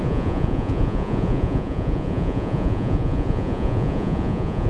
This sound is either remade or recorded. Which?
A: remade